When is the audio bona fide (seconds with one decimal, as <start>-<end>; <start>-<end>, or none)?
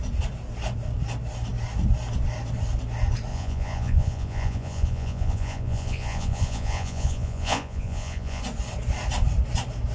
0.0-3.3; 8.4-9.9